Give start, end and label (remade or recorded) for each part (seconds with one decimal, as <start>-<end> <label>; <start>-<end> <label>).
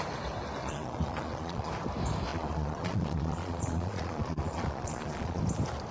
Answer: 0.0-0.6 recorded; 0.6-1.7 remade; 1.7-2.3 recorded; 2.3-5.4 remade; 5.4-5.9 recorded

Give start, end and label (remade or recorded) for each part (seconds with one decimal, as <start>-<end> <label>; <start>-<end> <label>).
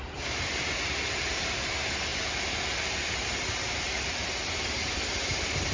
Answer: 0.0-2.1 remade; 2.1-4.5 recorded; 4.5-5.7 remade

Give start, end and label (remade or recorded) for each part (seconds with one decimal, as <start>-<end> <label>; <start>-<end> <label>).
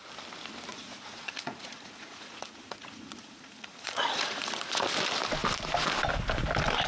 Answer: 0.0-0.7 recorded; 0.7-4.8 remade; 4.8-6.9 recorded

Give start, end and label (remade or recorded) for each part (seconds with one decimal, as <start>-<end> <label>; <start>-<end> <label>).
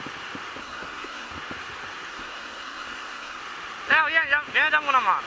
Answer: 0.0-0.6 recorded; 0.6-1.3 remade; 1.3-2.1 recorded; 2.1-3.4 remade; 3.4-5.3 recorded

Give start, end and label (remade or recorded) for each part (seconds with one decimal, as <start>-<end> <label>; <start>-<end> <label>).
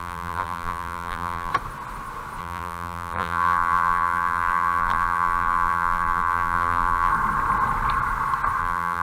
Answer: 0.0-1.5 remade; 1.5-2.4 recorded; 2.4-7.1 remade; 7.1-8.6 recorded; 8.6-9.0 remade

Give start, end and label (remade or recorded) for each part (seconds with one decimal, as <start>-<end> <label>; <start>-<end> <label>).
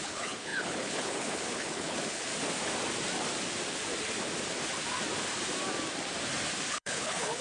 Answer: 0.0-2.3 remade; 2.3-6.7 recorded; 6.7-7.4 remade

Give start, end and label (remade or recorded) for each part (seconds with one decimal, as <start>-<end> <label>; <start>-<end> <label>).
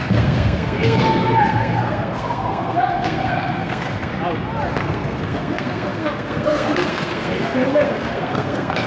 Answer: 0.0-4.1 remade; 4.1-4.8 recorded; 4.8-8.9 remade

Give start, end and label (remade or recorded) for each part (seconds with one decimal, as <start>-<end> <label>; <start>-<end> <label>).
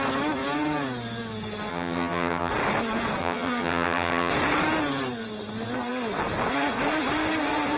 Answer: 0.0-1.7 recorded; 1.7-2.5 remade; 2.5-3.2 recorded; 3.2-4.3 remade; 4.3-7.8 recorded